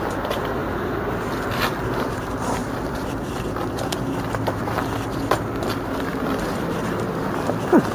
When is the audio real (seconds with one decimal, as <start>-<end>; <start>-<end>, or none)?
0.0-2.6; 6.7-7.9